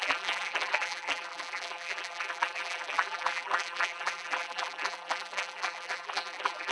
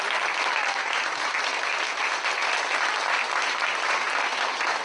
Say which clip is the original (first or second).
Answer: second